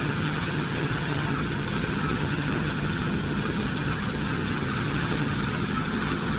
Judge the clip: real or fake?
fake